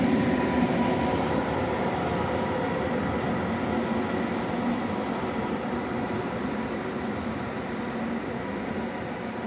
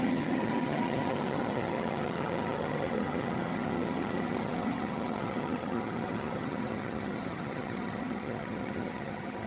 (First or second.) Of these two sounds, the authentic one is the first